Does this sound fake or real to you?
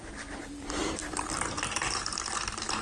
fake